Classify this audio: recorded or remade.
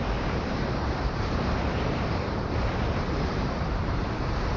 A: remade